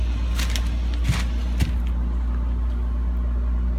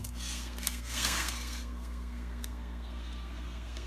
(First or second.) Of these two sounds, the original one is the first